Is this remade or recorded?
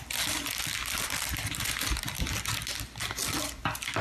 recorded